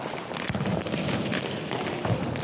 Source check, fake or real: real